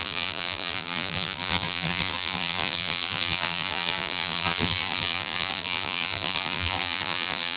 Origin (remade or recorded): remade